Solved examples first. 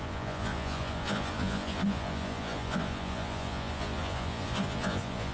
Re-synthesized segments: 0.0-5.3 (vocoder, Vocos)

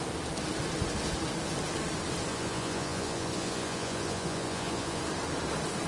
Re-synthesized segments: 2.3-5.0 (vocoder, Vocos)